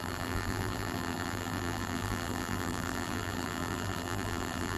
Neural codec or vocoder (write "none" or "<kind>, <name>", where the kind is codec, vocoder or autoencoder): vocoder, BigVGAN v2